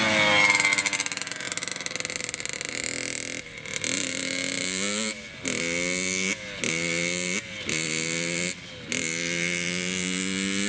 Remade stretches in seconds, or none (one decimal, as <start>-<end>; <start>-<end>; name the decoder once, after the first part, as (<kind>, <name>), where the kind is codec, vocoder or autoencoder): none